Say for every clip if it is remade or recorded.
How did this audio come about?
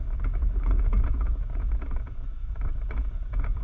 remade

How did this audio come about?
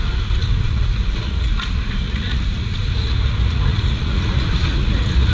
remade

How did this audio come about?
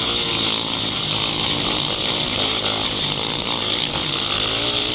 recorded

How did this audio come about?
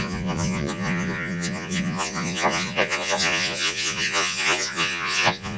remade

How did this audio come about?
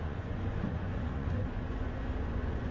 remade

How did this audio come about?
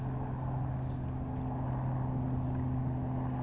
recorded